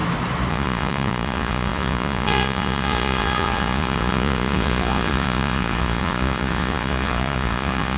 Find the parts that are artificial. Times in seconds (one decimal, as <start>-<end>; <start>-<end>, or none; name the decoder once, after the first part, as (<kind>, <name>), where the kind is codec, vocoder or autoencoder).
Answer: 0.5-8.0 (vocoder, Vocos)